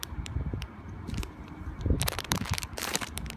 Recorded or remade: remade